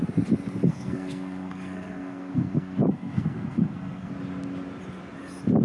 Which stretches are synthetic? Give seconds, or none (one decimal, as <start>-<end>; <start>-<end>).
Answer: 0.7-4.1